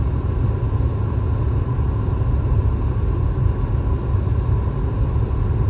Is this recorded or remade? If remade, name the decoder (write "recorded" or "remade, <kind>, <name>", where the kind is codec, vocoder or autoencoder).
recorded